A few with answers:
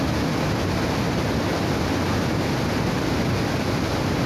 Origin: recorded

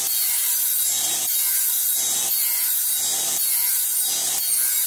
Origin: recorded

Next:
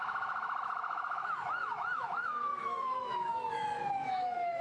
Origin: remade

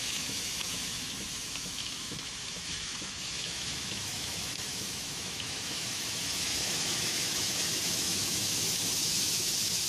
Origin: remade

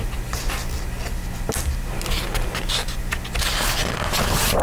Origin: recorded